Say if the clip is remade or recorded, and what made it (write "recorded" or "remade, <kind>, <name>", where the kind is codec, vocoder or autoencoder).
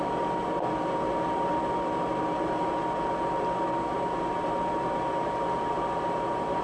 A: recorded